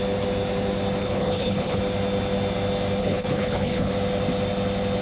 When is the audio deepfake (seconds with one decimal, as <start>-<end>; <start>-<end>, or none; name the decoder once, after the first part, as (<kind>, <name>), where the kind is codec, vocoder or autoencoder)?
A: 1.0-1.8 (codec, HILCodec); 3.0-3.9